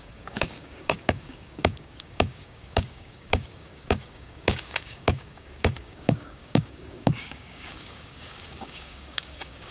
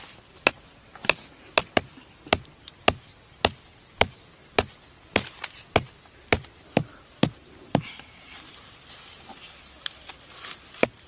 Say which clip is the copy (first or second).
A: first